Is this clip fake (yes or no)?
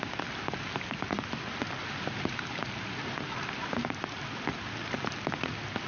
no